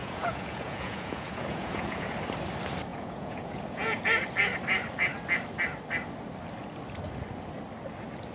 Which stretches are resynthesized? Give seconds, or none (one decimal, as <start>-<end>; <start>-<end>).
0.0-2.1; 2.9-4.0